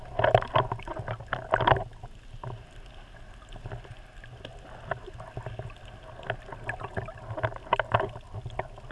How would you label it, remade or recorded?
recorded